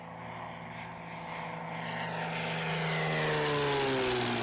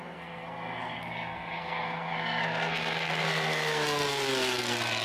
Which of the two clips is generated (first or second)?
second